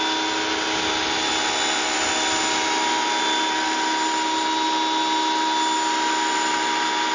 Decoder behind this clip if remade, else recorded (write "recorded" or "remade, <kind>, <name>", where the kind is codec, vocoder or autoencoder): recorded